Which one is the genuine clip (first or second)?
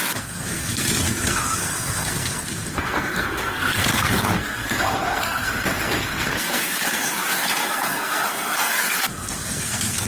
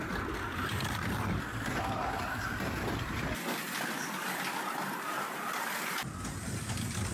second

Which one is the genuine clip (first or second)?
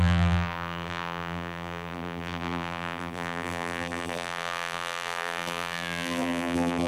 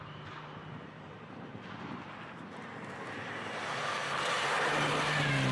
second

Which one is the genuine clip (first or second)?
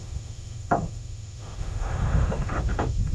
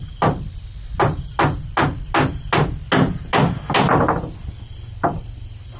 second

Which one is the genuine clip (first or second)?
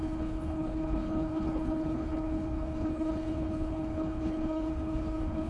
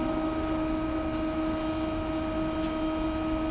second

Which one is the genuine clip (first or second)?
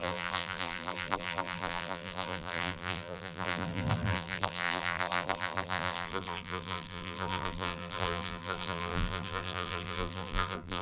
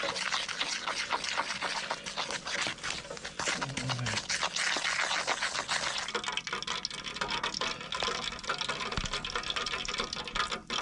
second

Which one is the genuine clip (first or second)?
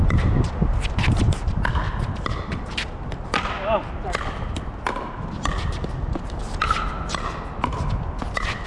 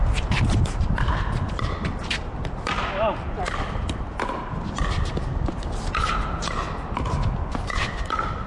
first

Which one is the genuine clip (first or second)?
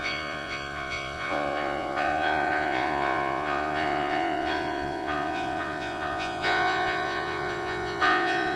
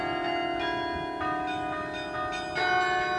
second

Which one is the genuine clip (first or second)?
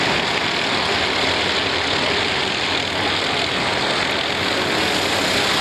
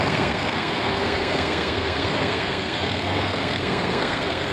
first